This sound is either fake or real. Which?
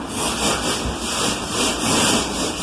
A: real